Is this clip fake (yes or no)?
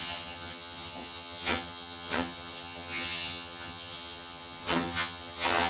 yes